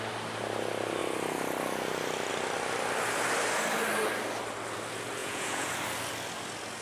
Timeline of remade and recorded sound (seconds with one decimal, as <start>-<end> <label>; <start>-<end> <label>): 0.0-5.2 recorded; 5.2-5.7 remade; 5.7-6.8 recorded